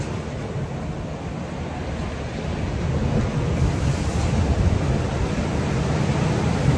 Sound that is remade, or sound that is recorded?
recorded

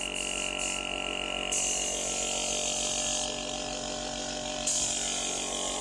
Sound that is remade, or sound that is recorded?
recorded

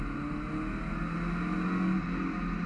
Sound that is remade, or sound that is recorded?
recorded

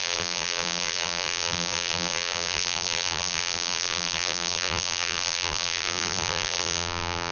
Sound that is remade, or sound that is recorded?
remade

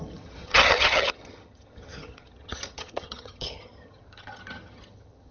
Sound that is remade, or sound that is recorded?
remade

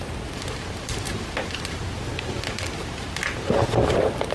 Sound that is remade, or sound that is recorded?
recorded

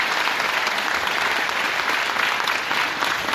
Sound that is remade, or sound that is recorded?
recorded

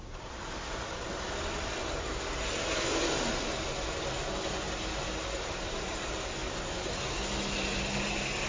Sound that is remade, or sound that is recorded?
recorded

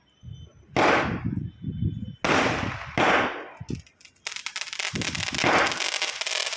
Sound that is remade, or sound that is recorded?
recorded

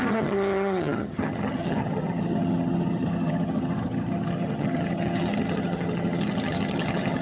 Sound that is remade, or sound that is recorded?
remade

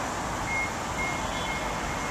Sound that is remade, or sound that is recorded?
recorded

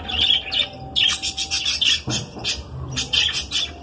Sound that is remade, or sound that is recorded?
recorded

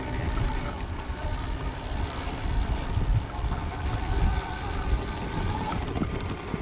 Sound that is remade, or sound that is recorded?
recorded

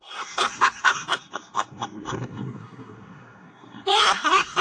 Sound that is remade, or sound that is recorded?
remade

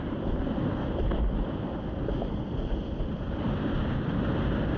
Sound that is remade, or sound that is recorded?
recorded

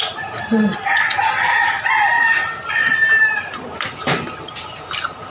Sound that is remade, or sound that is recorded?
recorded